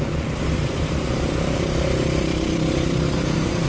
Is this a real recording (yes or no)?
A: no